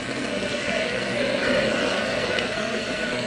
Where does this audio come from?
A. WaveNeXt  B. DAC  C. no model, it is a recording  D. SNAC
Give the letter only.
D